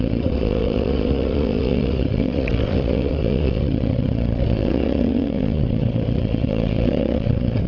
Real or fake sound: fake